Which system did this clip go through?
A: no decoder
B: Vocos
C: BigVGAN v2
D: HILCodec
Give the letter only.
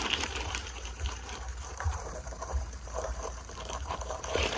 C